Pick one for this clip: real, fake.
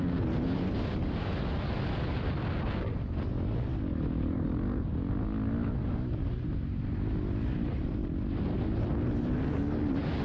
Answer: real